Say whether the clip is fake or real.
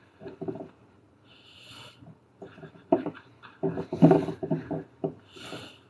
fake